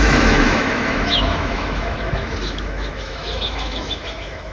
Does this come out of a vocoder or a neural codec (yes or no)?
yes